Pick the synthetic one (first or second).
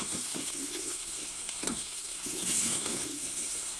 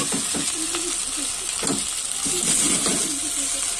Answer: first